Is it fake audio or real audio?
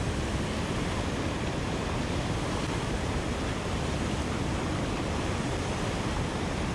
real